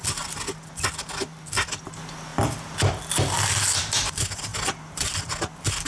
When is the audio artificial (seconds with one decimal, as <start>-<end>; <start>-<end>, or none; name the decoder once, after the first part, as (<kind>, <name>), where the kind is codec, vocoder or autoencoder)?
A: none